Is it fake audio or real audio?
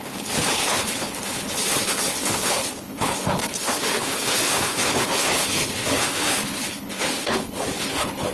fake